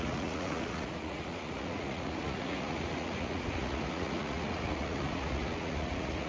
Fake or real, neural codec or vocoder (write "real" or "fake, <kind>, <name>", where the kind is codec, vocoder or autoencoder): fake, vocoder, Vocos